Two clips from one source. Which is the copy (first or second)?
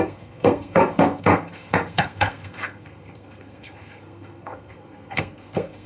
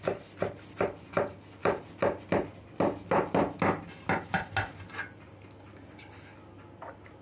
first